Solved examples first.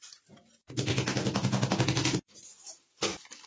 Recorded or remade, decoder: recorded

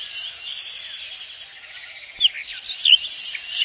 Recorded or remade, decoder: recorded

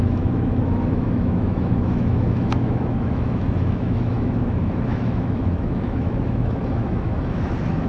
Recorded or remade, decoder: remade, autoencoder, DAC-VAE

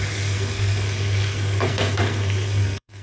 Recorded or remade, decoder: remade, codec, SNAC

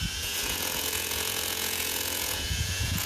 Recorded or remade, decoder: remade, vocoder, Vocos